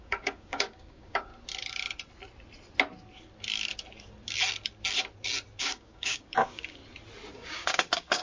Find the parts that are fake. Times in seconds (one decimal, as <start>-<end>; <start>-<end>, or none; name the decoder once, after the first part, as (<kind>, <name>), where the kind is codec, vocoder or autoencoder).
0.0-1.3 (codec, DAC); 5.6-6.8; 7.3-8.2